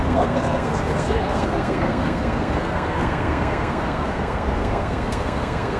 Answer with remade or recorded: remade